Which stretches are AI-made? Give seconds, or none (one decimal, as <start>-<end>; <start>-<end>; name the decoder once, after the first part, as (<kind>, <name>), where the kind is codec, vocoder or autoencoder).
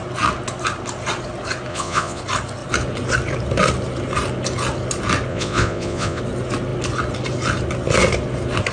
1.7-2.2 (vocoder, Vocos); 5.3-6.2